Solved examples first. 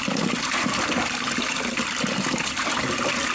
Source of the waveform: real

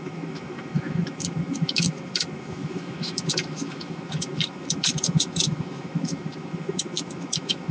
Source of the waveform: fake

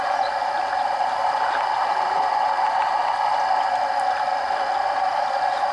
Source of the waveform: real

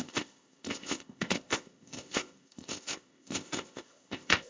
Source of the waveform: fake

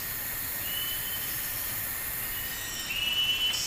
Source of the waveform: real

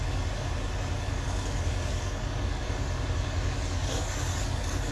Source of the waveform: fake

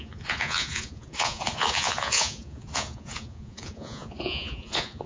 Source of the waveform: fake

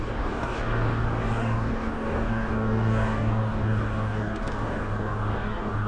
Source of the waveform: fake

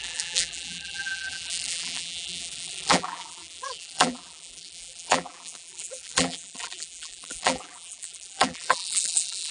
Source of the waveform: fake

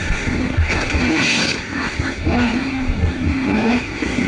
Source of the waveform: fake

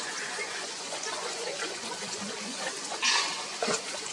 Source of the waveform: fake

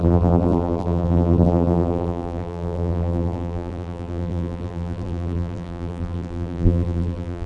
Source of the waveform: fake